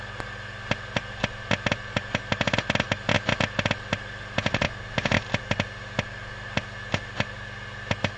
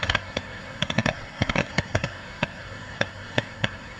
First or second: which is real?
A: first